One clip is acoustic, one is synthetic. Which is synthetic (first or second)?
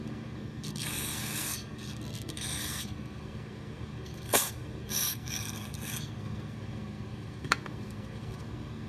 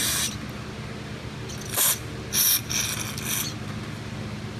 first